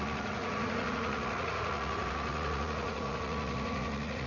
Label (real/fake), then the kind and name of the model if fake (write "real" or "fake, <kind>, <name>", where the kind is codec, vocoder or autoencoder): fake, vocoder, Vocos